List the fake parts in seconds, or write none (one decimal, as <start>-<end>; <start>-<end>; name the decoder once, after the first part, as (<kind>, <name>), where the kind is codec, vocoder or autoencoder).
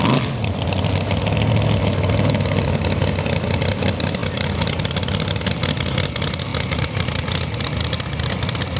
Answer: 6.5-7.2 (vocoder, BigVGAN v2)